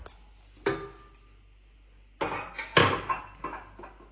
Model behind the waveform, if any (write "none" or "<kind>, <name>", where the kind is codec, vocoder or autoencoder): none